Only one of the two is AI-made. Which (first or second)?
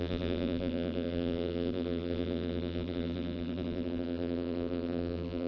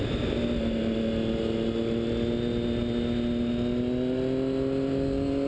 first